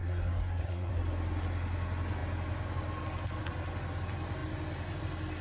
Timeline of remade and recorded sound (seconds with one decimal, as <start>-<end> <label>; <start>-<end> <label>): 0.0-0.9 remade; 0.9-5.4 recorded